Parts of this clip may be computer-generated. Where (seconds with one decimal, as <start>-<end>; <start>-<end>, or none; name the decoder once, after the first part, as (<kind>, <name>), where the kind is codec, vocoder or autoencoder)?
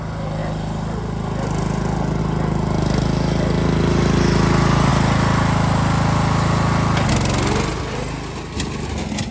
none